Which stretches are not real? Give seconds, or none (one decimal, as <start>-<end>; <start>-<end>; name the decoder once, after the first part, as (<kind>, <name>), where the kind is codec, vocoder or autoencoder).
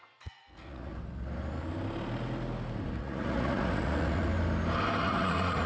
0.0-0.9 (vocoder, Vocos); 3.0-4.3; 5.0-5.7